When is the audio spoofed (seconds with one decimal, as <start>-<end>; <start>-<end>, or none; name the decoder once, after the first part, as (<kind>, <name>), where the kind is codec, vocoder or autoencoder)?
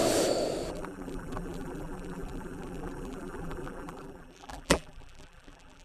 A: 0.7-5.8 (vocoder, BigVGAN v2)